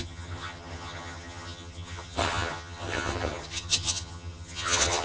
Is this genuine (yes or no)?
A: no